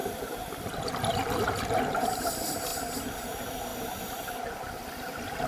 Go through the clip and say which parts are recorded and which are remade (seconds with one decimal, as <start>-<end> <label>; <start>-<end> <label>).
0.0-5.5 recorded